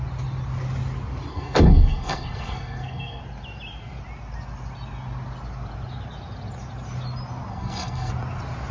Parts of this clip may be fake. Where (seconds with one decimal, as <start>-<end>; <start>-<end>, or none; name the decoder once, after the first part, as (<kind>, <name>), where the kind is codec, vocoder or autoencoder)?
1.3-3.2 (codec, SNAC); 7.5-8.1